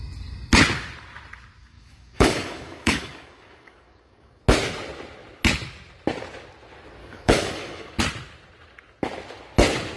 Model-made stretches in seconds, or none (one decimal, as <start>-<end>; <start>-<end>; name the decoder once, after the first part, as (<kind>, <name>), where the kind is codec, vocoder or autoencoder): 1.6-4.4 (codec, DAC); 7.0-8.0